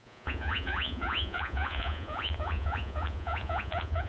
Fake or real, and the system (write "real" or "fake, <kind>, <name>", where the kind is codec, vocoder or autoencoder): fake, vocoder, Vocos